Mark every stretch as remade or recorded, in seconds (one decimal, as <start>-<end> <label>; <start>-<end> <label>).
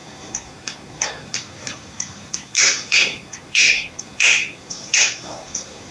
0.0-5.9 remade